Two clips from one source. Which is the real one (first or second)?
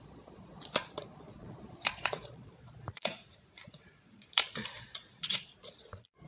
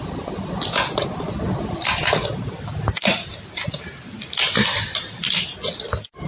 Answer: second